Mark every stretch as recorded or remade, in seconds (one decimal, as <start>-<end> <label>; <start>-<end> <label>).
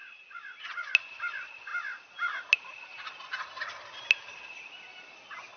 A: 0.0-5.6 recorded